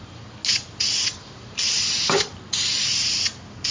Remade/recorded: recorded